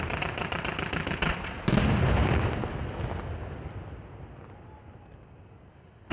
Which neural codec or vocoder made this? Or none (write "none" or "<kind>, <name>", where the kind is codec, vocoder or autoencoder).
none